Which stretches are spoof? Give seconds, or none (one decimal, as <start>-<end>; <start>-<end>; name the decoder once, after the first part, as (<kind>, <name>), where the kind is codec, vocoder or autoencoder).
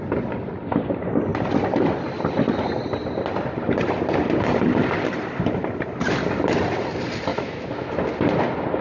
7.3-7.9 (autoencoder, DAC-VAE)